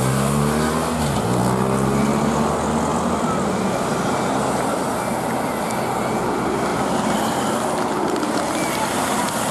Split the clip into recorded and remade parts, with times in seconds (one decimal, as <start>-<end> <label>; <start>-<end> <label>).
0.0-9.5 recorded